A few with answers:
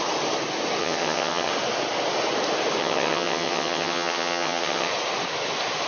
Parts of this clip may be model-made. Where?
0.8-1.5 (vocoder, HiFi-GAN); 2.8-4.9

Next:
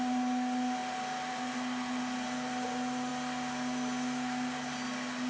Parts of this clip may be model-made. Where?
none

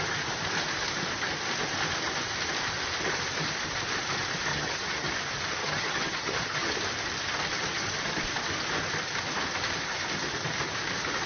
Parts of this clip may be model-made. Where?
4.5-5.1 (vocoder, HiFi-GAN); 5.6-6.7

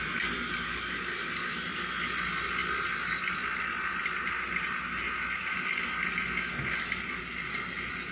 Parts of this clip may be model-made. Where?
none

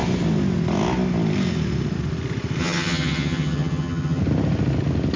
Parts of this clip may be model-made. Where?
2.6-4.2 (vocoder, HiFi-GAN)

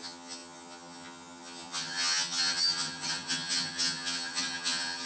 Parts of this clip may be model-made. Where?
0.0-5.1 (vocoder, HiFi-GAN)